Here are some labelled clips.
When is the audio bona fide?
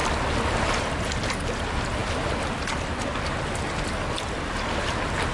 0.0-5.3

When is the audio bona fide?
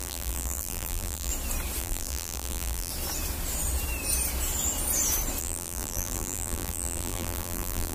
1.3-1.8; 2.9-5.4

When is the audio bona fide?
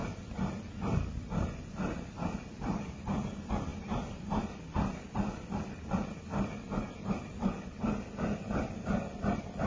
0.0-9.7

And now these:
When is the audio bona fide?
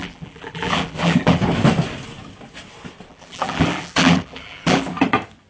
1.4-3.1; 4.9-5.5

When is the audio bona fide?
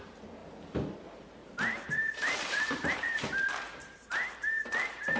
0.0-1.4; 4.5-5.2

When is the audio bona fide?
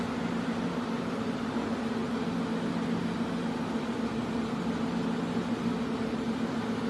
0.0-6.9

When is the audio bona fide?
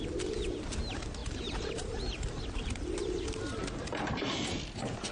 0.0-1.2; 2.4-3.8; 4.6-5.1